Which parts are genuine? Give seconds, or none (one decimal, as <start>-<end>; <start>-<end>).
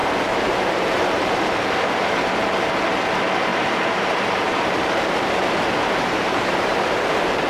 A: 2.3-3.5